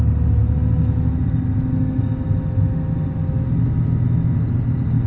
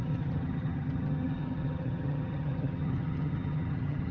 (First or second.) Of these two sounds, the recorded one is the first